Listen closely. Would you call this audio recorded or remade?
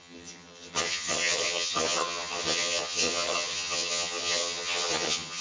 remade